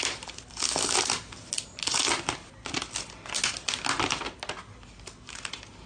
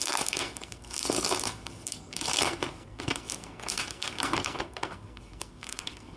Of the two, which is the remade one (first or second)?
second